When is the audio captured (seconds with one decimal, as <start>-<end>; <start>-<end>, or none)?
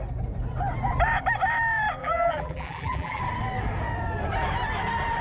0.0-2.0; 3.2-5.2